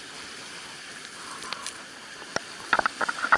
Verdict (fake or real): real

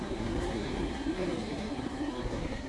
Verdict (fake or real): fake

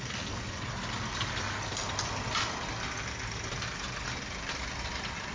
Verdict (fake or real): real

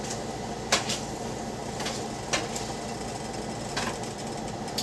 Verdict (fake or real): real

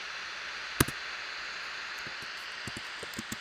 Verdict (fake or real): real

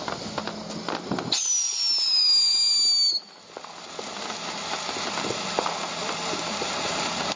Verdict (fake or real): real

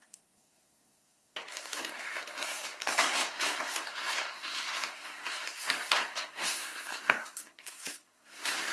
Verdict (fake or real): fake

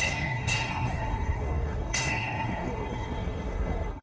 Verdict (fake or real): fake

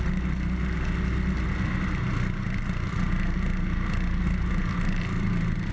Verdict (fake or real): real